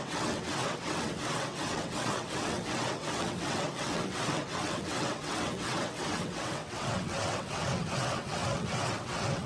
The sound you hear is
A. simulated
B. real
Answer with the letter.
A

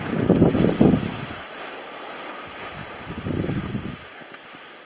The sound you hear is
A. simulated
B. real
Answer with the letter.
B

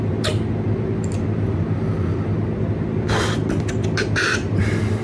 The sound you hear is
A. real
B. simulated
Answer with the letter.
A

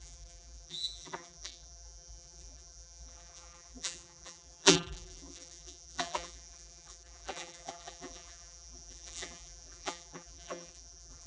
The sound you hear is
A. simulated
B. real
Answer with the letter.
A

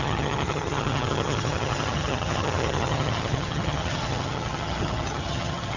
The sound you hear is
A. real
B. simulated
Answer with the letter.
B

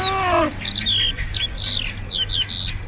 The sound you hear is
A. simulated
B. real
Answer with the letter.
B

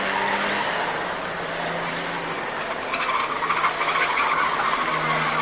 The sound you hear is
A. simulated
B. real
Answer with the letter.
B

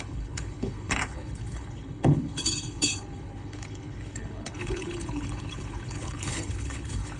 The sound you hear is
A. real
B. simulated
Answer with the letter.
B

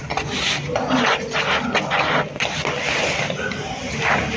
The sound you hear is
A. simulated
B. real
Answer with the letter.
B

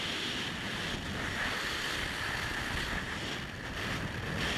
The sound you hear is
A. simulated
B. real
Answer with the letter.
B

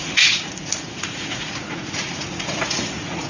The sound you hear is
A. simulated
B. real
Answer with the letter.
A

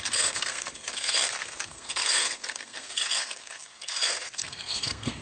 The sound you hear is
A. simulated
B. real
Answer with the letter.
A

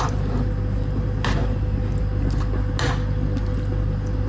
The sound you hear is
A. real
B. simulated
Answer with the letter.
A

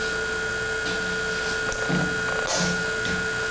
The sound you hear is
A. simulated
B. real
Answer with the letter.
B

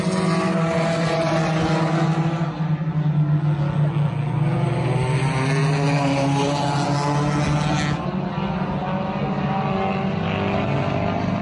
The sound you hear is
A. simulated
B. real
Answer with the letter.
B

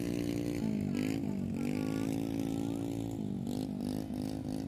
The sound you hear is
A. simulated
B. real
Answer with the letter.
B